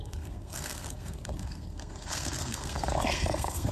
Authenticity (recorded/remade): remade